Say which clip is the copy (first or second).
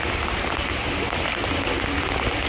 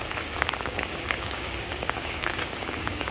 second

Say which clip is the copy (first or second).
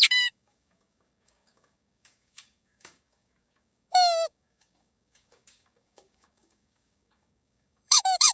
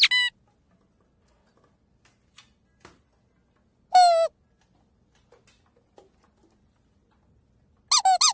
first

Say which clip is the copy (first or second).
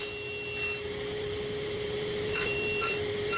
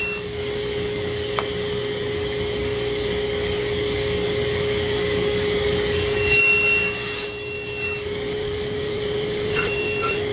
second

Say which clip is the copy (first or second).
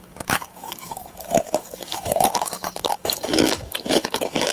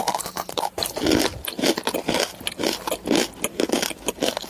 first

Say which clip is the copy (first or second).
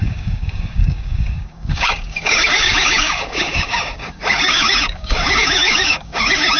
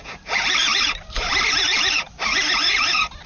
first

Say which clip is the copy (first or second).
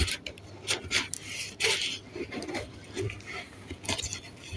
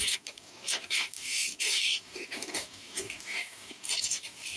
second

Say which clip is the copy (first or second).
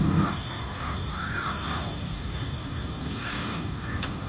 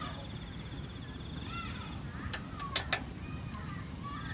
first